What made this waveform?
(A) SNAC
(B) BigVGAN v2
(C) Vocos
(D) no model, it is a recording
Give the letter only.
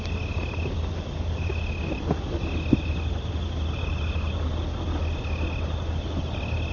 D